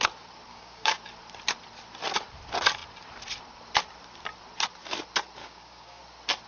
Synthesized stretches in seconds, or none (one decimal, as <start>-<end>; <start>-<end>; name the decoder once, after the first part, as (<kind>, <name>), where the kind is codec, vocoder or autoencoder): 0.5-1.0 (codec, DAC); 5.4-6.0